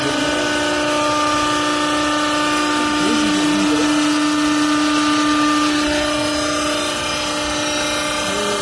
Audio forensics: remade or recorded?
recorded